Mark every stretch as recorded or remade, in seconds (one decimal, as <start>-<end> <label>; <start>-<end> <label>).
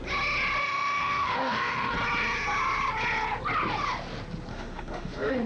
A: 0.0-0.6 recorded; 0.6-1.9 remade; 1.9-4.5 recorded; 4.5-5.5 remade